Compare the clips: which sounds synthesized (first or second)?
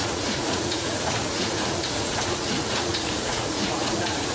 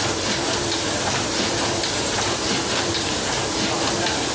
first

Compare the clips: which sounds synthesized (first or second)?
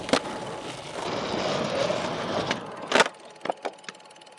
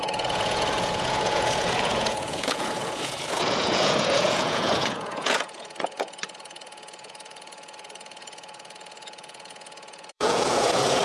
second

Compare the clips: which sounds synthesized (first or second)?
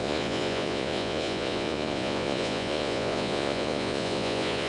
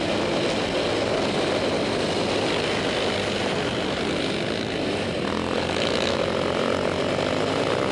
first